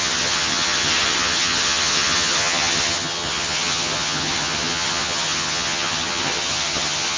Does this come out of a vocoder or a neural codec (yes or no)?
yes